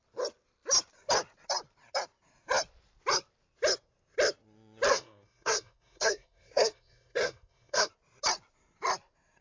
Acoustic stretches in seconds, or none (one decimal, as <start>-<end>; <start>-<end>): 0.0-4.9; 7.9-9.4